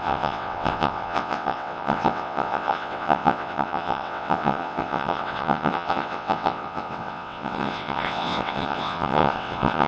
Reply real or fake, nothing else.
fake